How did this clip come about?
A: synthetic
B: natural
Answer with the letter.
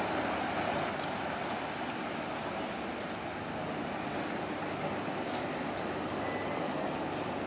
B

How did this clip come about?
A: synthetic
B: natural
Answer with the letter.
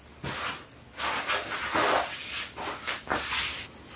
B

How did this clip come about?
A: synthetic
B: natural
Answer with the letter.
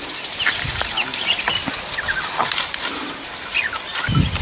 B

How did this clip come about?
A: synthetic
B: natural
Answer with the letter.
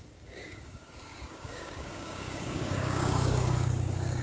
A